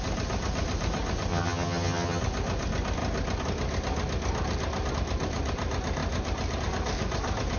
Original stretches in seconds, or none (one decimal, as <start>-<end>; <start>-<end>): 0.0-1.3; 2.2-7.6